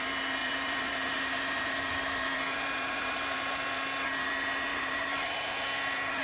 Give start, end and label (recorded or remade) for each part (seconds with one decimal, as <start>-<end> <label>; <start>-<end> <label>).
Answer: 0.0-0.4 recorded; 0.4-3.5 remade; 3.5-4.7 recorded; 4.7-5.3 remade; 5.3-6.2 recorded